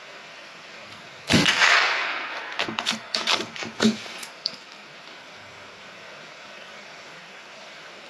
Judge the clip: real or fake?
fake